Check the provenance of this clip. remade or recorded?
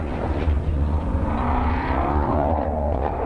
remade